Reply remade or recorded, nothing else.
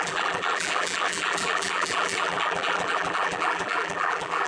remade